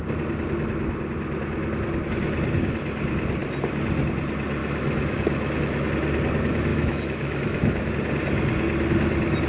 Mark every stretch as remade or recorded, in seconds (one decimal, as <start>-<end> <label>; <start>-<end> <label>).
0.0-4.6 recorded; 4.6-5.9 remade; 5.9-6.7 recorded; 6.7-7.9 remade; 7.9-9.5 recorded